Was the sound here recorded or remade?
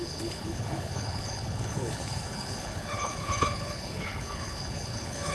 remade